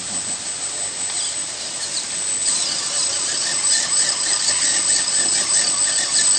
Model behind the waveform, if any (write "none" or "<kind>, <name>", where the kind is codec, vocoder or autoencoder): none